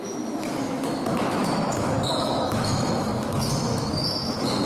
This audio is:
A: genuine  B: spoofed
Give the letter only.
B